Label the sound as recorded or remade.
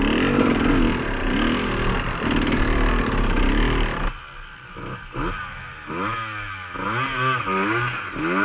recorded